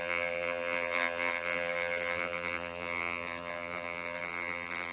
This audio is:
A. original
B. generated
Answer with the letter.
B